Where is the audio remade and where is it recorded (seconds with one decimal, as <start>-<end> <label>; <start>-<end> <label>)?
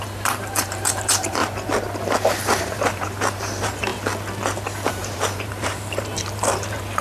0.0-1.4 remade; 1.4-2.6 recorded; 2.6-3.9 remade; 3.9-4.9 recorded; 4.9-7.0 remade